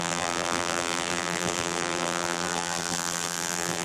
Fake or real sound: fake